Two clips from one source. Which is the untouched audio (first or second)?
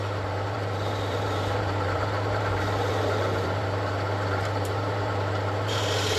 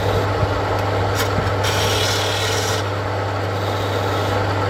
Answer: second